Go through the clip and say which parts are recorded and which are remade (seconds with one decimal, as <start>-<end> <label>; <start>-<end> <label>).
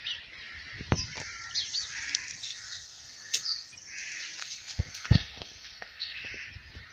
0.0-2.4 recorded; 2.4-3.7 remade; 3.7-4.4 recorded; 4.4-6.3 remade; 6.3-6.9 recorded